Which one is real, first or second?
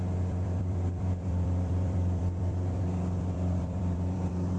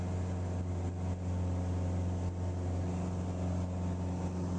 second